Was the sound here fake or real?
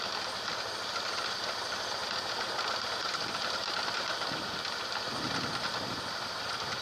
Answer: real